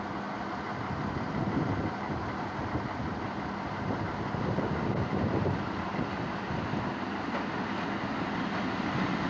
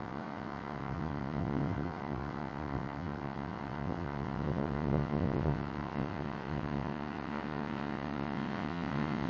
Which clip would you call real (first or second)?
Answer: first